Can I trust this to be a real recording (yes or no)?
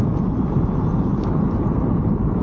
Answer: yes